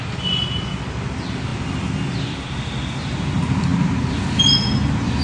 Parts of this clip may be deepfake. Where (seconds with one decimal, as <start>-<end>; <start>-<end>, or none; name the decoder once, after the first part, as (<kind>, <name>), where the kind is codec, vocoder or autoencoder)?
none